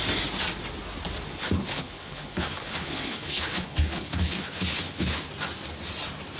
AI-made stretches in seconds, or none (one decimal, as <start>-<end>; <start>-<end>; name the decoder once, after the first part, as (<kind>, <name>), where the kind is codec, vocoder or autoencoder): 1.4-5.2 (codec, HILCodec)